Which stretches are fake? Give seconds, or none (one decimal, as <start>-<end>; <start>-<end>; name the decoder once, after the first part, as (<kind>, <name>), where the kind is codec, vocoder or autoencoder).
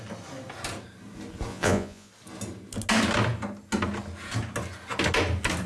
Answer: 1.5-2.1 (vocoder, Vocos)